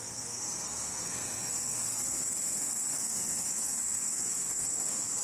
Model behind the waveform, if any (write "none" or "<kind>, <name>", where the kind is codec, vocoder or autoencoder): codec, SNAC